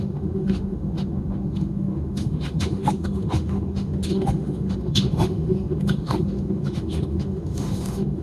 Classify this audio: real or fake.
fake